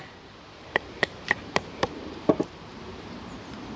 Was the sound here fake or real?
fake